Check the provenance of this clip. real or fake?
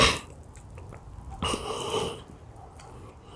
real